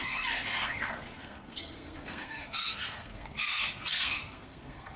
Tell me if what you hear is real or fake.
fake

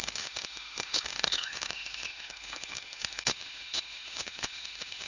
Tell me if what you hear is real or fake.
fake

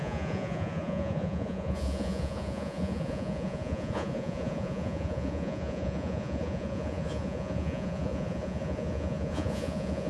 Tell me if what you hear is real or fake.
fake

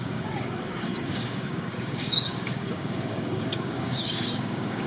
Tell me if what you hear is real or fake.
fake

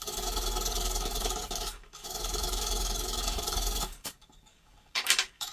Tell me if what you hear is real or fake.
fake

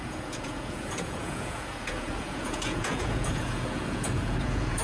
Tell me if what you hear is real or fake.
fake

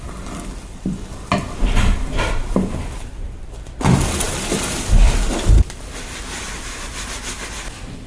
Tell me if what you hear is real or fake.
fake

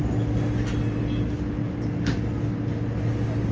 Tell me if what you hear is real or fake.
real